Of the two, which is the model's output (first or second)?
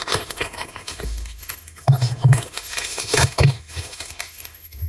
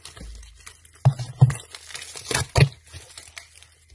first